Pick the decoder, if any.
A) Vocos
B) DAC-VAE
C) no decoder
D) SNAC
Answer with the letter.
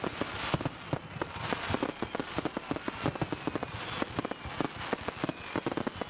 C